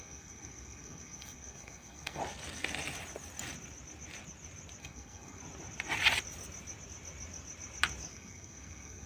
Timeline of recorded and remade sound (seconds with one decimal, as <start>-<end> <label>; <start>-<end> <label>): 0.0-2.2 remade; 2.2-4.8 recorded; 4.8-5.4 remade; 5.4-8.1 recorded; 8.1-9.1 remade